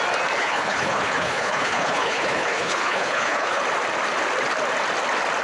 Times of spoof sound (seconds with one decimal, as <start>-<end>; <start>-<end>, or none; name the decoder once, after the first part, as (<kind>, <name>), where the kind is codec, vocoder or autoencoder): 0.4-3.6 (codec, HILCodec)